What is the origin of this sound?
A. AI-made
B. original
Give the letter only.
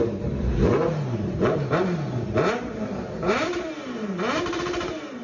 A